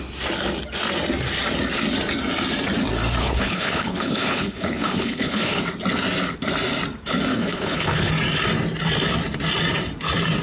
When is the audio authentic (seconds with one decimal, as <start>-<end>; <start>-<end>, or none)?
0.0-3.2; 5.6-7.3; 8.1-10.4